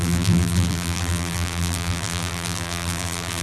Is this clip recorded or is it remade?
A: remade